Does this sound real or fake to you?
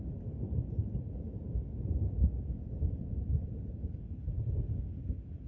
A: real